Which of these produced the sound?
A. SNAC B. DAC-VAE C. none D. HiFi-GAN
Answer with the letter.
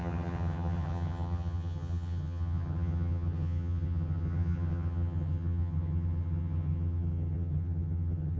D